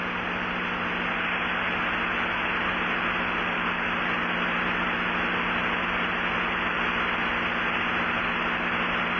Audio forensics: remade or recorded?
recorded